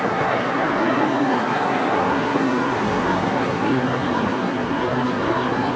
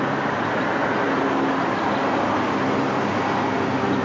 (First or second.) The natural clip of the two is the second